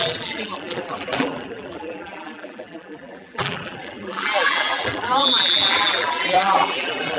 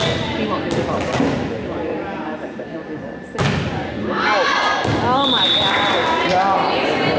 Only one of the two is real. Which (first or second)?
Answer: second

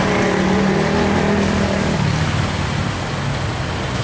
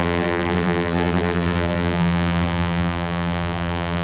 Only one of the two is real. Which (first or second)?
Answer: first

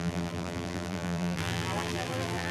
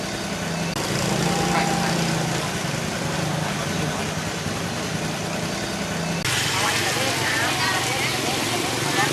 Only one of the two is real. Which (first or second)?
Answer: second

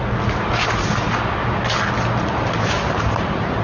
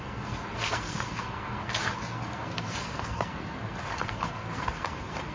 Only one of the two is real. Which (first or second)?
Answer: first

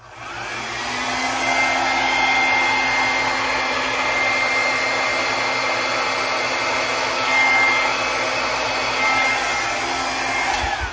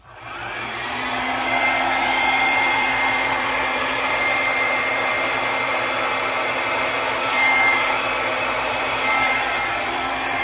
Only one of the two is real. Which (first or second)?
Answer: first